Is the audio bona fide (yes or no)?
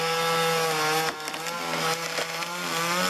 yes